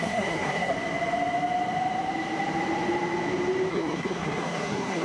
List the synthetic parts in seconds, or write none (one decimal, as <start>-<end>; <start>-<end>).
0.0-0.7; 3.7-5.0